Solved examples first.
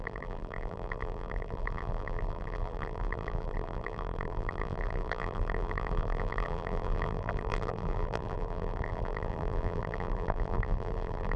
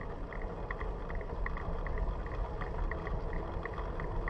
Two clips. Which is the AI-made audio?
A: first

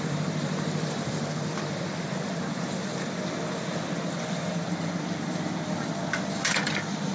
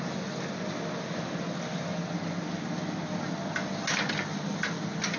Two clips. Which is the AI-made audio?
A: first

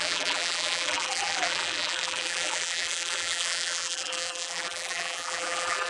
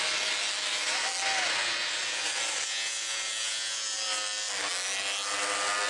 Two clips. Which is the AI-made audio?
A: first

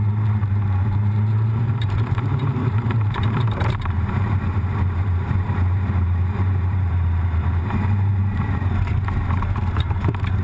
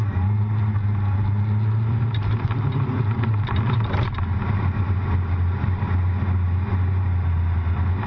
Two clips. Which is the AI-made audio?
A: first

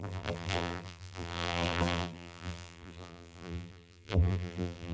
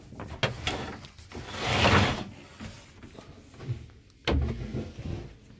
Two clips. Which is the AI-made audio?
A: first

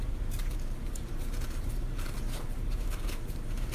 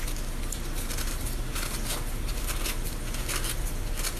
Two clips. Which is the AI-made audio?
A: first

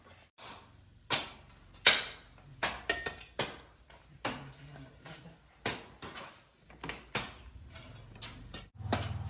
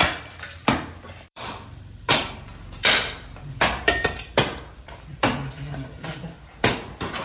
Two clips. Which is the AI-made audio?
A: second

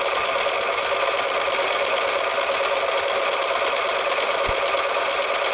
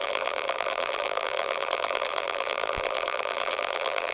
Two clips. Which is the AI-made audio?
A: second